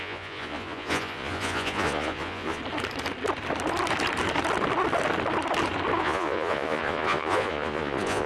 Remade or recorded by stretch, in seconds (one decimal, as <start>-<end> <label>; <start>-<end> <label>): 0.0-2.6 remade; 2.6-6.0 recorded; 6.0-8.3 remade